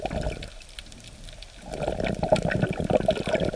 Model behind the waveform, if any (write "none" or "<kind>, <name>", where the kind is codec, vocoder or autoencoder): none